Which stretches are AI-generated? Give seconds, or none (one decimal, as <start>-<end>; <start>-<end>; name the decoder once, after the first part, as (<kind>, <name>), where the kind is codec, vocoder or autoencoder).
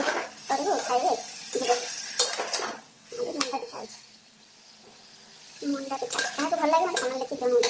2.9-4.4 (codec, SNAC)